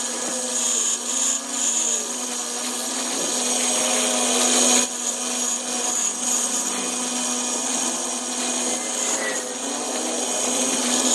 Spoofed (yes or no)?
no